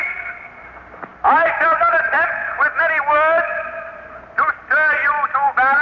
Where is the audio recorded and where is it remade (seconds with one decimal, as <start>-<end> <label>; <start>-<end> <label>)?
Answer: 0.0-5.8 recorded